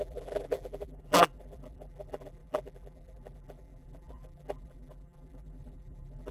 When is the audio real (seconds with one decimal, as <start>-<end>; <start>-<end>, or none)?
none